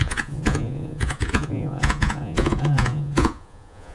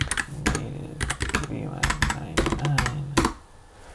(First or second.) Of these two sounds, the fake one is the first